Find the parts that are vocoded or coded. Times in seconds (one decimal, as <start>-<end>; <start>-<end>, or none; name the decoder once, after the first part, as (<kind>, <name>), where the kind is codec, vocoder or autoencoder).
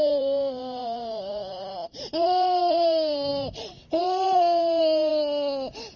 0.0-5.1 (vocoder, BigVGAN v2)